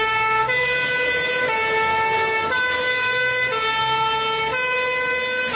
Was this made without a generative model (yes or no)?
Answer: yes